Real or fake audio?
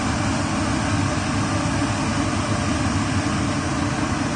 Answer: real